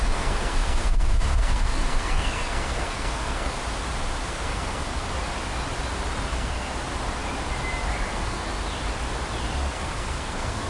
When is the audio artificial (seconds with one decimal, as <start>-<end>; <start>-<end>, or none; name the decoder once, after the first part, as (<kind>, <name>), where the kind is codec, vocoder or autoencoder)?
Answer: 0.0-3.6 (codec, SNAC); 4.2-5.1; 6.3-6.7; 8.1-8.5; 9.6-10.7